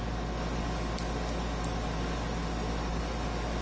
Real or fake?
real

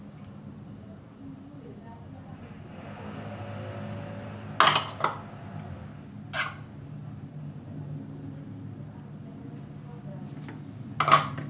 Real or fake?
real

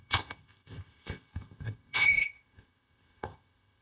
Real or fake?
fake